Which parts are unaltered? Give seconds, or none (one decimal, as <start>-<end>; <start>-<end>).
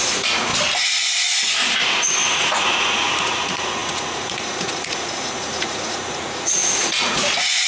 0.5-1.8